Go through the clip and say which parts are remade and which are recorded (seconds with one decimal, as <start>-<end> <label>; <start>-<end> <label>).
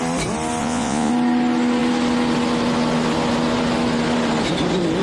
0.0-0.6 recorded; 0.6-1.1 remade; 1.1-5.0 recorded